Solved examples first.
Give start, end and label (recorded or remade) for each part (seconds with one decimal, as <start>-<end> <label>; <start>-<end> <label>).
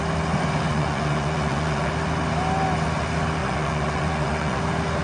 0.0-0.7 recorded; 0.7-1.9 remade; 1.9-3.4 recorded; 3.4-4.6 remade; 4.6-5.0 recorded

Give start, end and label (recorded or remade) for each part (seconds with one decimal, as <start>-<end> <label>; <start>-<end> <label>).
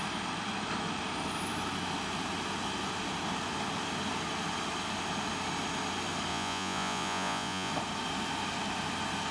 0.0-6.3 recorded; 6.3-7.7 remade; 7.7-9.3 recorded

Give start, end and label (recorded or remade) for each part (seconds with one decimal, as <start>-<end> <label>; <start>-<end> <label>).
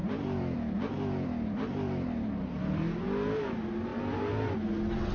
0.0-3.0 remade; 3.0-3.9 recorded; 3.9-4.5 remade; 4.5-5.1 recorded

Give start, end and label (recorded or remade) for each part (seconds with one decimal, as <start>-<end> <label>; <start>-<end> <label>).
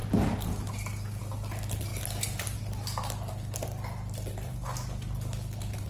0.0-5.9 recorded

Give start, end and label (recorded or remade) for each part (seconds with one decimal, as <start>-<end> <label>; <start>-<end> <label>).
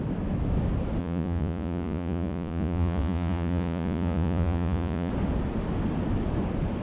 0.0-1.0 recorded; 1.0-5.1 remade; 5.1-6.8 recorded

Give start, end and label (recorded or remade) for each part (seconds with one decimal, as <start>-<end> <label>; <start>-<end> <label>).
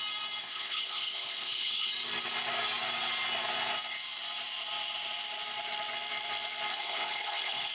0.0-0.4 recorded; 0.4-1.9 remade; 1.9-6.7 recorded; 6.7-7.7 remade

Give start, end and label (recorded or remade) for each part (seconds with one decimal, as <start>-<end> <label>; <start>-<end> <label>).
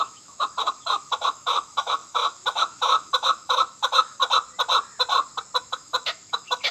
0.0-4.2 remade; 4.2-5.6 recorded; 5.6-6.7 remade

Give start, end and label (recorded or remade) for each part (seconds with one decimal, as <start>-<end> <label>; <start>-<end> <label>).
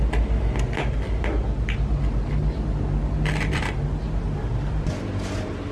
0.0-2.4 recorded; 2.4-4.2 remade; 4.2-5.7 recorded